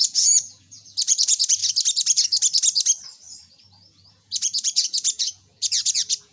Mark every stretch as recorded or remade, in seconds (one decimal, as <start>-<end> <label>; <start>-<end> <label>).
0.0-1.6 remade; 1.6-4.1 recorded; 4.1-6.3 remade